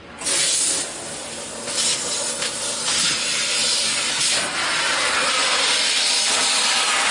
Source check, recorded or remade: recorded